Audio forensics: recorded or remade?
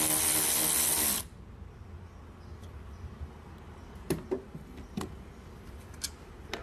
recorded